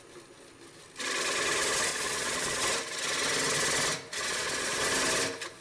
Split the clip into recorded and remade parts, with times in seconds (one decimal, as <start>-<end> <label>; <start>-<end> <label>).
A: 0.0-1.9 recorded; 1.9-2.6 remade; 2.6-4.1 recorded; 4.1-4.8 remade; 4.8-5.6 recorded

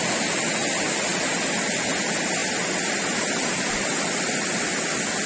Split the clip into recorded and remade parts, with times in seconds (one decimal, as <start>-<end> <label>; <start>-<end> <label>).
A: 0.0-5.3 recorded

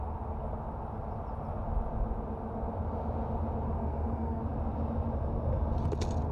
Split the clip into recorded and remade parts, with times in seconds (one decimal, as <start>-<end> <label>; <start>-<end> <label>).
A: 0.0-3.8 recorded; 3.8-4.4 remade; 4.4-6.3 recorded

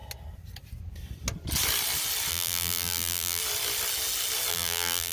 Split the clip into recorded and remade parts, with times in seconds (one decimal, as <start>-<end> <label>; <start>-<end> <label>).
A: 0.0-2.3 recorded; 2.3-3.4 remade; 3.4-4.5 recorded; 4.5-5.1 remade